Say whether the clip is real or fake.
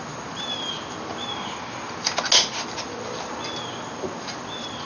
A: real